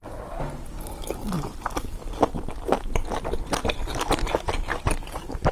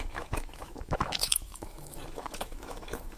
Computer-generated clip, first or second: second